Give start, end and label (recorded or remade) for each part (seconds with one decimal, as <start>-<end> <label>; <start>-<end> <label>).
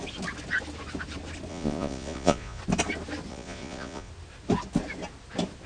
0.0-1.5 recorded; 1.5-2.6 remade; 2.6-3.3 recorded; 3.3-4.1 remade; 4.1-5.7 recorded